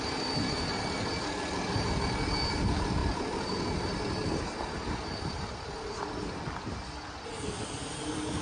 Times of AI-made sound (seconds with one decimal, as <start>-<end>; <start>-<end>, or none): 0.0-8.4